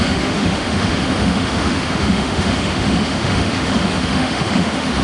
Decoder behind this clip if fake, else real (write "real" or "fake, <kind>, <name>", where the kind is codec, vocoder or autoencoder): fake, autoencoder, DAC-VAE